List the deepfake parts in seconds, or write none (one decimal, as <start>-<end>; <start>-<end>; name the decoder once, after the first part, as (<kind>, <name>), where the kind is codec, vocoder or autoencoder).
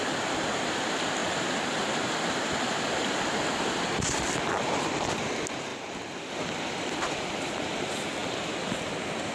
0.0-1.2 (vocoder, BigVGAN v2); 2.5-5.7; 6.3-8.2